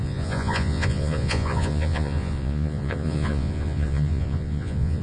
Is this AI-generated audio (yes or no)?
yes